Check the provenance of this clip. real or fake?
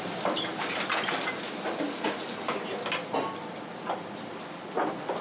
real